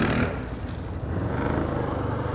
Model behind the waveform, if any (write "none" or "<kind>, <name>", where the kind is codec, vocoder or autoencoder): none